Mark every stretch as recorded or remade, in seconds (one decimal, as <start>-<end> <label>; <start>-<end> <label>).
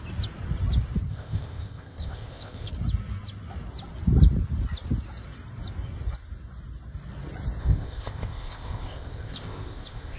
0.0-1.1 recorded; 1.1-2.7 remade; 2.7-7.6 recorded; 7.6-10.2 remade